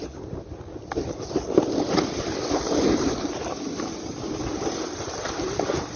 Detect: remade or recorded recorded